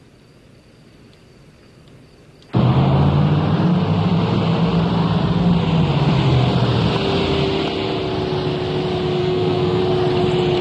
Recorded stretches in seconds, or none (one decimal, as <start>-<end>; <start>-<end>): 0.0-9.2; 9.8-10.6